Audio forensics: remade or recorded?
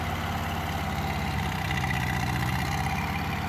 recorded